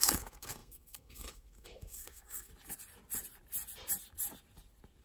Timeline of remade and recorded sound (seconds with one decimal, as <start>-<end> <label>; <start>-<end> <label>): 0.0-2.5 remade; 2.5-5.0 recorded